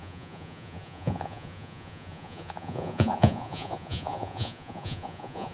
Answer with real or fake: fake